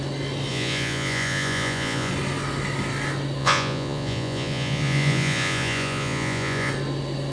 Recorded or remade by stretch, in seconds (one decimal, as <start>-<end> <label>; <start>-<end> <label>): 0.0-0.5 recorded; 0.5-2.1 remade; 2.1-3.4 recorded; 3.4-6.7 remade; 6.7-7.3 recorded